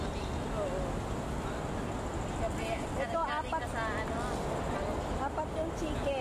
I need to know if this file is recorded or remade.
recorded